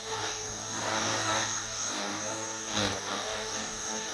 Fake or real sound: fake